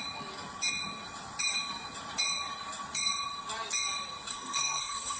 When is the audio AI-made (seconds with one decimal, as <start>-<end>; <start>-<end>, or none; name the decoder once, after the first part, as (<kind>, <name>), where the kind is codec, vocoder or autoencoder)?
4.3-5.2 (codec, SNAC)